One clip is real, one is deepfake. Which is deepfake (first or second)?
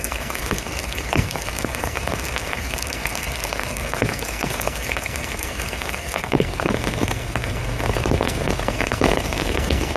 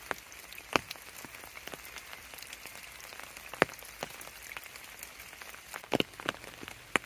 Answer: first